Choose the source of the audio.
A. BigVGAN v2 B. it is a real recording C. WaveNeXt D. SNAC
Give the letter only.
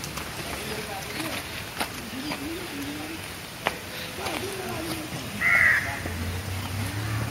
B